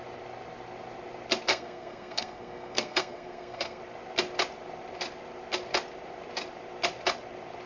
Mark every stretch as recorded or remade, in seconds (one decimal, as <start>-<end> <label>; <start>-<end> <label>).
0.0-1.5 recorded; 1.5-3.8 remade; 3.8-7.7 recorded